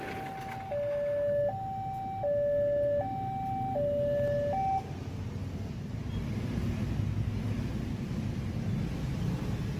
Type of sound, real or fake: real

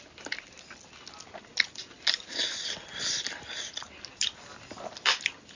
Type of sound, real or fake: real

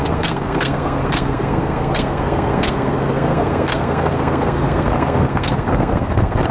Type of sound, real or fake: fake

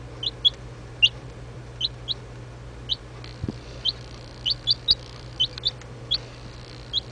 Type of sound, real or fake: real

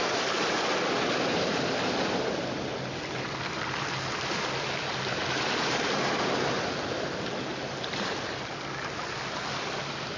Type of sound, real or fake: real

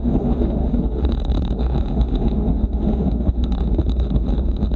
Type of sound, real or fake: fake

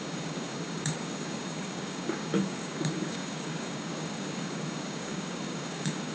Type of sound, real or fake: fake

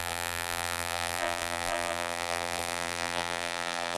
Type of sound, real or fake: fake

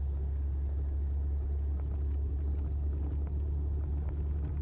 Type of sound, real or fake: real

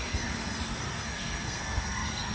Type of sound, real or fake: fake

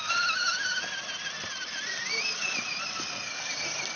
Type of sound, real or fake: real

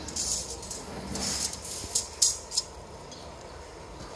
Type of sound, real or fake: real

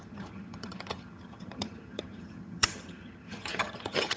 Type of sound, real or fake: fake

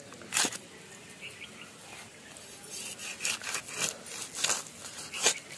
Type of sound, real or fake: real